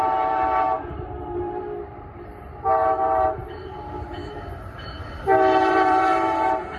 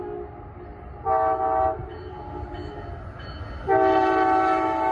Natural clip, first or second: second